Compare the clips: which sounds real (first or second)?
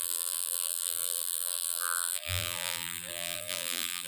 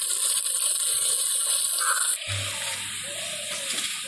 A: second